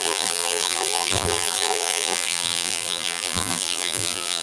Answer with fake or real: fake